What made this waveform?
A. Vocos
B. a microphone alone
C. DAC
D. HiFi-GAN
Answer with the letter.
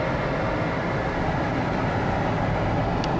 B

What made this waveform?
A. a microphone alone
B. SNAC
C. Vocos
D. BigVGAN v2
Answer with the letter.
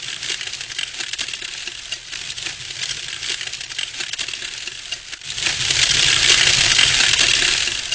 A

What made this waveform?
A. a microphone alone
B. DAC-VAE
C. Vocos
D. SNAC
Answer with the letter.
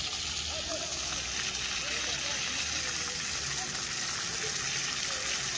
A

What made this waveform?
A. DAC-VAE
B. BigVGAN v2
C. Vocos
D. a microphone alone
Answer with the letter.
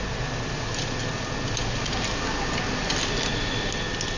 D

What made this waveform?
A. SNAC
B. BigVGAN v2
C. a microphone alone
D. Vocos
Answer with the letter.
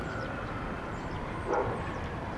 B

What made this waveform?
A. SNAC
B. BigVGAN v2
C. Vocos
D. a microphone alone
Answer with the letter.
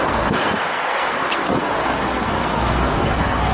A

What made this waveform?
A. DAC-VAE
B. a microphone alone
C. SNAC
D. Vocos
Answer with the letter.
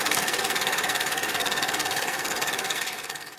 C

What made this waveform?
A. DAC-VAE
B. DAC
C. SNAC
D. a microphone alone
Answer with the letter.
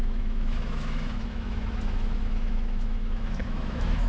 A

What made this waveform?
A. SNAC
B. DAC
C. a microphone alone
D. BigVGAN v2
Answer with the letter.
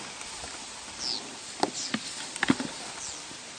C